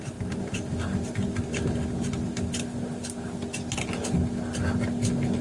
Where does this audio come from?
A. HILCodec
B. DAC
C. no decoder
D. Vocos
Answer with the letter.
C